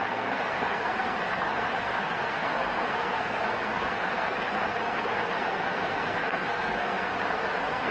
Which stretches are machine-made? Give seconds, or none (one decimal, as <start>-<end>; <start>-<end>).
0.0-7.9